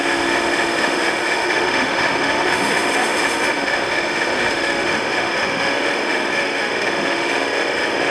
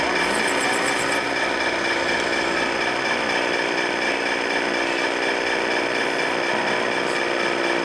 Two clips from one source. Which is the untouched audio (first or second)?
second